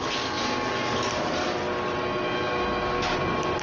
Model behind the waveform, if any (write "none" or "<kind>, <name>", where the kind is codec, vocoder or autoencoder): none